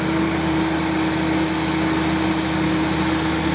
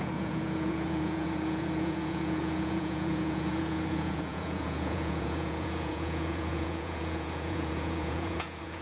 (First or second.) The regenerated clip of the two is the second